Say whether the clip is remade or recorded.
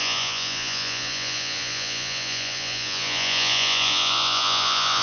remade